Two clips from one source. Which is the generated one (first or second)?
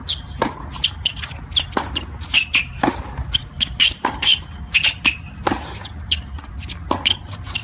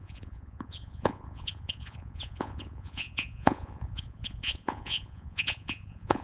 second